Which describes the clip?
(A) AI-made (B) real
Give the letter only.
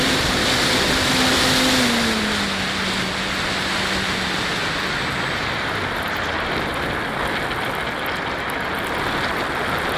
B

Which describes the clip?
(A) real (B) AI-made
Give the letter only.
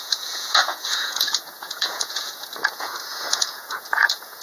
B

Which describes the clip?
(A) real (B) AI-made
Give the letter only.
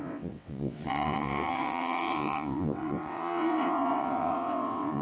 B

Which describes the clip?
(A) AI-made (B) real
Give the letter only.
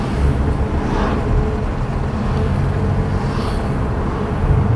B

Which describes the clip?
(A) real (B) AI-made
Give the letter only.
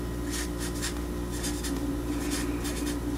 A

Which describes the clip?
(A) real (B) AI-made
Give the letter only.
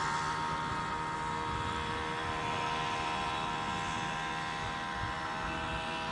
A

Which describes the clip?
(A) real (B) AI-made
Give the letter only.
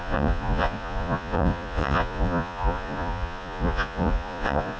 B